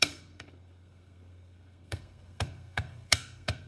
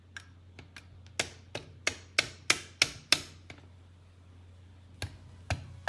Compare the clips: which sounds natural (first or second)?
second